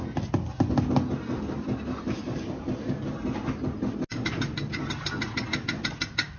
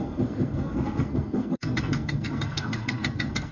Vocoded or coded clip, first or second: second